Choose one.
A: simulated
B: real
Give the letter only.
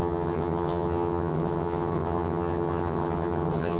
A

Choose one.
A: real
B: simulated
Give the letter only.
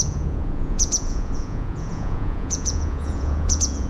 B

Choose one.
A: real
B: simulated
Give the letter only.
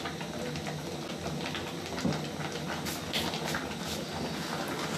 A